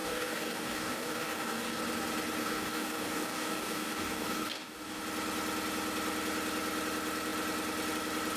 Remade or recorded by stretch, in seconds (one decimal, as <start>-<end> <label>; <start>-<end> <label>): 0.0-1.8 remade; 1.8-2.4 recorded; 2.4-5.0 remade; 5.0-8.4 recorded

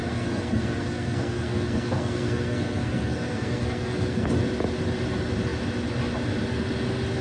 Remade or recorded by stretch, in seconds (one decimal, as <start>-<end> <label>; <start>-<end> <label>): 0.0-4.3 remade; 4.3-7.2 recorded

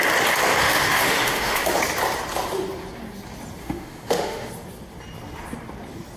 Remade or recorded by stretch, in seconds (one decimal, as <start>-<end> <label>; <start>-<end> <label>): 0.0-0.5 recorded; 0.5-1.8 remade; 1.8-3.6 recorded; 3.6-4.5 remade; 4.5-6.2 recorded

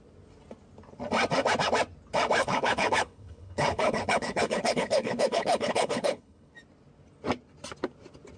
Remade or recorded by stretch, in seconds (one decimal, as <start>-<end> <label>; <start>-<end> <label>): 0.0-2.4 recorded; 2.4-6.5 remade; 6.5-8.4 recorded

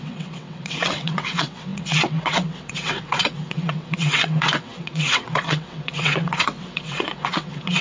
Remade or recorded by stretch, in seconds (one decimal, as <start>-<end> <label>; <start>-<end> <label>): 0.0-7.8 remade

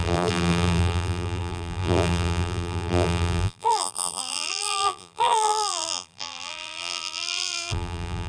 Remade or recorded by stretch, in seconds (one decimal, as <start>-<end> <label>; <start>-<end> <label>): 0.0-8.3 remade